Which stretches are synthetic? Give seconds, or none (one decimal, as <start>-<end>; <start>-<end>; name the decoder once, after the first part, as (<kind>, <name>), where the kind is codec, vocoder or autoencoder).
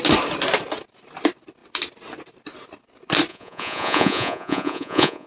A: 3.3-5.3 (vocoder, Vocos)